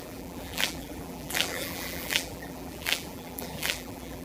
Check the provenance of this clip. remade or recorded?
remade